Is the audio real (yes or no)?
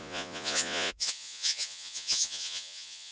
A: no